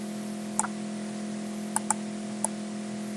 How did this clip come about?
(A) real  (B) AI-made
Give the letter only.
A